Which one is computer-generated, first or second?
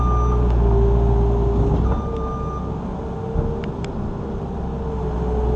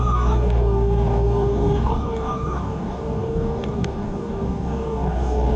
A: second